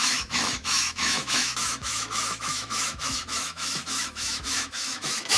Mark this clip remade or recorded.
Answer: remade